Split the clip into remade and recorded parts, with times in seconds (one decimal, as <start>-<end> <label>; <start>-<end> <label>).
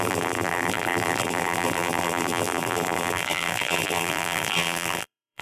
0.0-5.4 remade